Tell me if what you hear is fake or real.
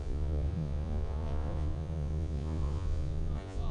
fake